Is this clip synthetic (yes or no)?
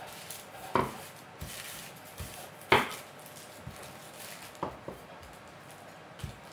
no